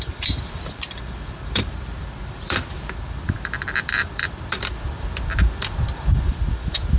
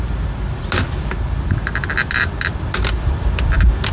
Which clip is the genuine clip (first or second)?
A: second